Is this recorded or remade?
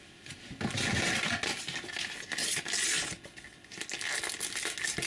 recorded